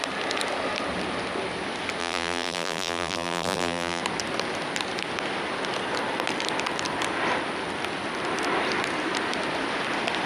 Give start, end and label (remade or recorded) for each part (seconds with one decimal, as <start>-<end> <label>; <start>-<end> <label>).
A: 0.0-2.0 recorded; 2.0-4.0 remade; 4.0-10.3 recorded